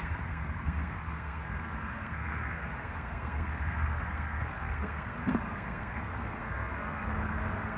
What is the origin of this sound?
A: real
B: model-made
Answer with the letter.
B